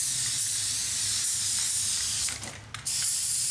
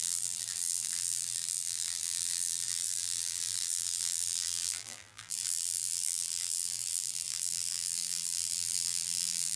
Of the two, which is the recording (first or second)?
first